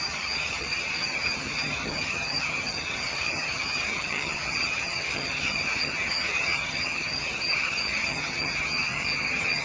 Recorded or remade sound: remade